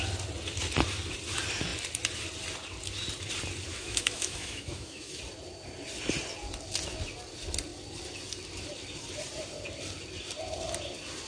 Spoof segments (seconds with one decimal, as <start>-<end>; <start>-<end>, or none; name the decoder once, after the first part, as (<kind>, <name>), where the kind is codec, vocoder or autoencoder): 3.7-5.2 (autoencoder, DAC-VAE)